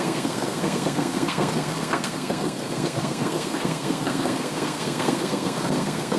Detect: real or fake fake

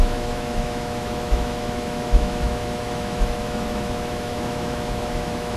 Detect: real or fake fake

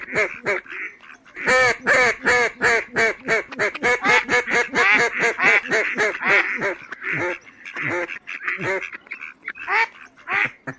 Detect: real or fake real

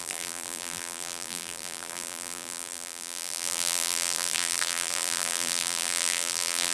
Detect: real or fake fake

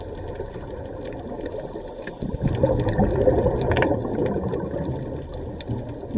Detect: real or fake real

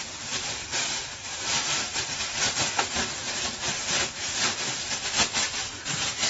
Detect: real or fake fake